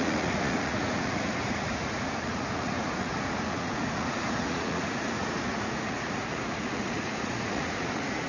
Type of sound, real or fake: fake